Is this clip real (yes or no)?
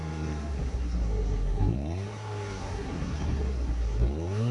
no